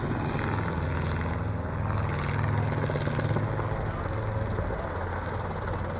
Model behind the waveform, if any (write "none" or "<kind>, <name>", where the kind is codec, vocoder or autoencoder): none